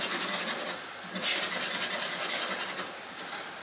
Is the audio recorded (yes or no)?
yes